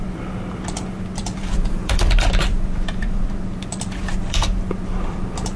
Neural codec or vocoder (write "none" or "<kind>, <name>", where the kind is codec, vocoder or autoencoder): vocoder, BigVGAN v2